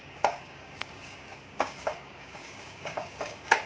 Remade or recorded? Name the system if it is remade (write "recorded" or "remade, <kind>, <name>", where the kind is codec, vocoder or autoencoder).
remade, codec, DAC